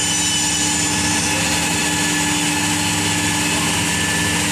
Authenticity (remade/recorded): recorded